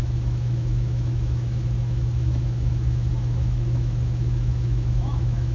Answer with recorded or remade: remade